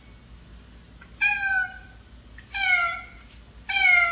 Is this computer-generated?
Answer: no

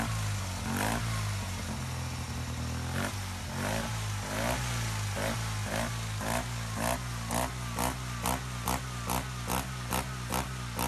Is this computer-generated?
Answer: no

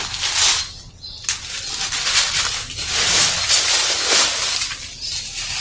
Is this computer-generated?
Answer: no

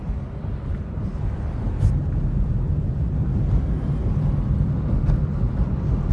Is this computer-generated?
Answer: no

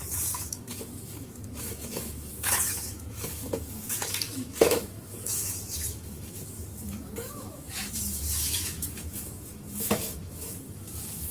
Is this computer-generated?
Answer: yes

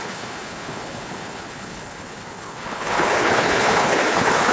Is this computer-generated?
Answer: yes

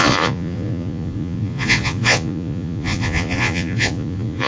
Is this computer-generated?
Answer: yes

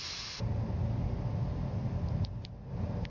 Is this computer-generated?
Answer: no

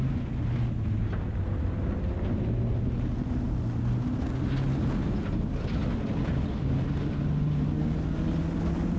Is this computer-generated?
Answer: no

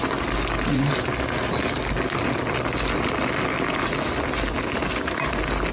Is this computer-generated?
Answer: no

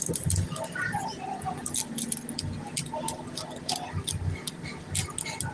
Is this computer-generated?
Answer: no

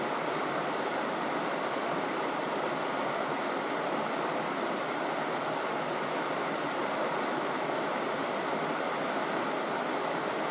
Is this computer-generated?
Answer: no